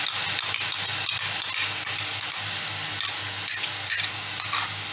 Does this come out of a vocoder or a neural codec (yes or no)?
no